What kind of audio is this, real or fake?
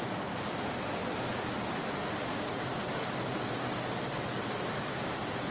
real